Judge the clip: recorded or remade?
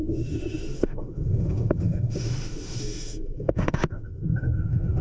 remade